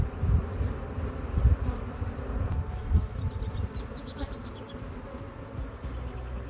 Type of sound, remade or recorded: recorded